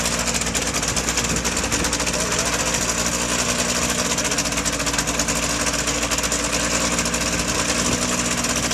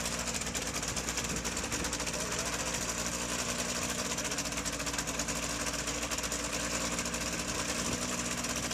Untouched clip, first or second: first